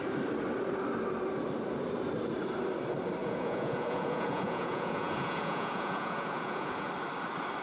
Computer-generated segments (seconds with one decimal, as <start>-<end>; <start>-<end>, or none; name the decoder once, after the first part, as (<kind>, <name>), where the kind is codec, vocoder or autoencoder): 3.2-6.9 (vocoder, Vocos)